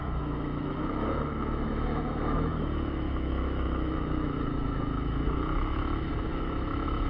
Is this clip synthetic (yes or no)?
yes